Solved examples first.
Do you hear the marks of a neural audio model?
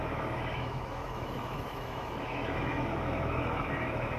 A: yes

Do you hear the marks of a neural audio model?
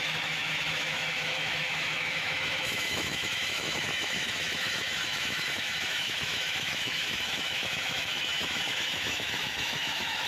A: yes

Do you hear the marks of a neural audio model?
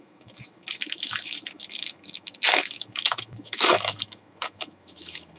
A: yes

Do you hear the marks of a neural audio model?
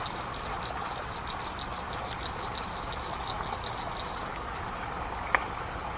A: no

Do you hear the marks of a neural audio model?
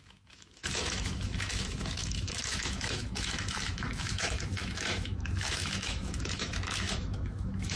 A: yes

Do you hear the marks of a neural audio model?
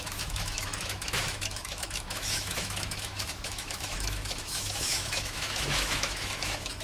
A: yes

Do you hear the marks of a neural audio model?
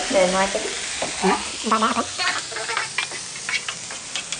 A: no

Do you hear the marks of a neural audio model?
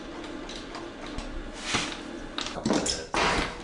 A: no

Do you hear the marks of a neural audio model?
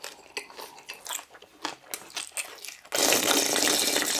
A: no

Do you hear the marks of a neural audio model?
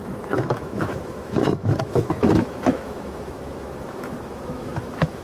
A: yes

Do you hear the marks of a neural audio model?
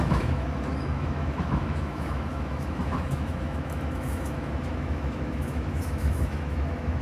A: yes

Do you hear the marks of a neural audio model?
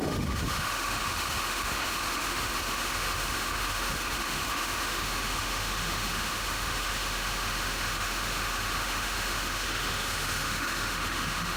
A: yes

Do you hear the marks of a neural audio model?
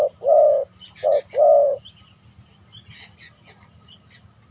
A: no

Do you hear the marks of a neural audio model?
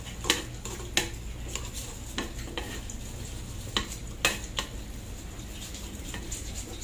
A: no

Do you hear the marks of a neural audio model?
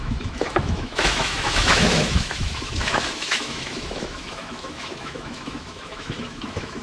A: yes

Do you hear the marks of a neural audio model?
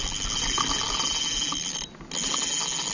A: no